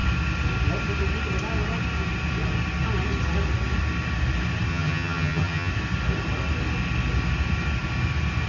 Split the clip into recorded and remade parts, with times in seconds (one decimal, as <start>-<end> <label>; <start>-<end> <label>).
0.0-4.7 recorded; 4.7-5.7 remade; 5.7-8.5 recorded